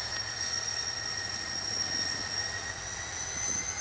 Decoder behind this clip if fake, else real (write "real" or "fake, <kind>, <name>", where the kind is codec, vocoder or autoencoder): fake, vocoder, Vocos